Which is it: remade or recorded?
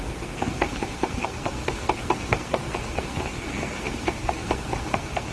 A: remade